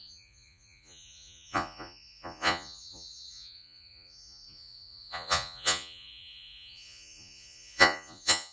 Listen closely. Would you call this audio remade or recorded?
remade